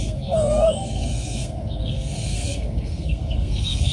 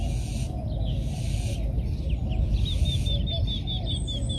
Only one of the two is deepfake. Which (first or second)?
first